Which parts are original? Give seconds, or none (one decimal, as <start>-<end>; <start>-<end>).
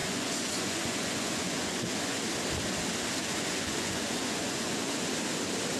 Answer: 2.2-3.2; 5.1-5.8